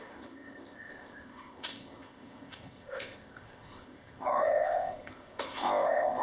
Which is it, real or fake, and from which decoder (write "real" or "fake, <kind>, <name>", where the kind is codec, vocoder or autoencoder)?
fake, codec, ZipCodec